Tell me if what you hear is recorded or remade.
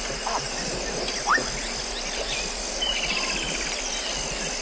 recorded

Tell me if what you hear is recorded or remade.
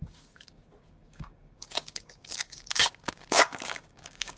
remade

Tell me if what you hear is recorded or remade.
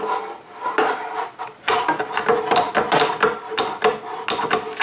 recorded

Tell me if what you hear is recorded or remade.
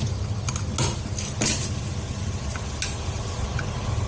recorded